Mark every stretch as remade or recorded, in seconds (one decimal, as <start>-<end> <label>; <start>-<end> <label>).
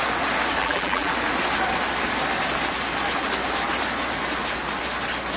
0.0-0.6 recorded; 0.6-1.1 remade; 1.1-5.4 recorded